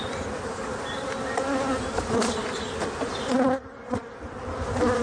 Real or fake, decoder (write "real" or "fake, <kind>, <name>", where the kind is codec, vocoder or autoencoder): fake, vocoder, BigVGAN v2